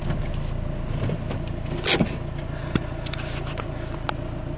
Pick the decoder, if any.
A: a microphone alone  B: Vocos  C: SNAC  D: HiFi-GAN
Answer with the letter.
A